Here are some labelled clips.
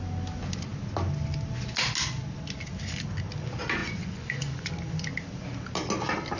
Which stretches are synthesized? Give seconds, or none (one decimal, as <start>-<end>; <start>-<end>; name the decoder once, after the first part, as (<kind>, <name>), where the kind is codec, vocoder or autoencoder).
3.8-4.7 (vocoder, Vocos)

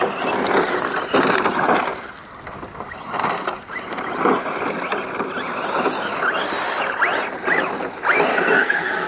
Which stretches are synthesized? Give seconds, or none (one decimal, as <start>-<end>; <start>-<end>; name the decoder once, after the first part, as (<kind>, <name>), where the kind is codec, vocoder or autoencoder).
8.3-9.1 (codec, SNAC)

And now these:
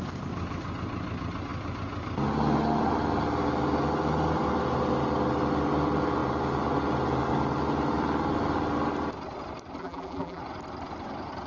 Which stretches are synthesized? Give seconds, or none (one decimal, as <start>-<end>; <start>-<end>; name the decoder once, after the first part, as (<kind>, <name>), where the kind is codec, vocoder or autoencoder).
9.8-10.4 (vocoder, BigVGAN v2)